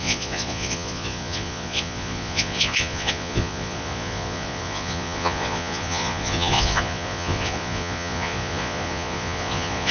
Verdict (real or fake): fake